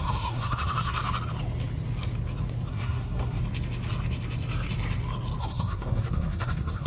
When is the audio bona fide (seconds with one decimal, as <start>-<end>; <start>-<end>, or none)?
1.0-2.7; 3.4-5.4